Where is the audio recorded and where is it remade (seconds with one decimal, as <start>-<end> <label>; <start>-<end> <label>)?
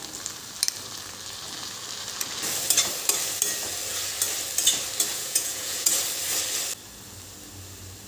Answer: 0.0-5.1 recorded; 5.1-5.9 remade; 5.9-8.1 recorded